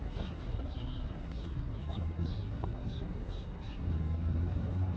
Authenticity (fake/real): fake